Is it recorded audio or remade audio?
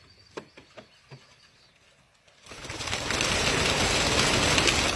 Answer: recorded